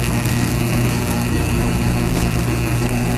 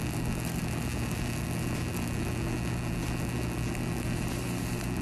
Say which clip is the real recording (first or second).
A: second